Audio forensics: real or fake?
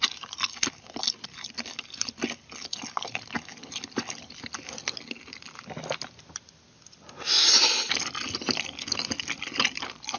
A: real